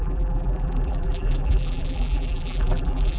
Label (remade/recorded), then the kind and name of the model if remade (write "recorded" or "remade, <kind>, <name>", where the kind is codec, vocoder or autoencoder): remade, vocoder, BigVGAN v2